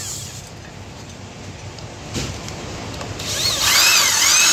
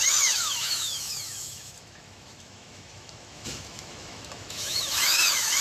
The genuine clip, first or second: first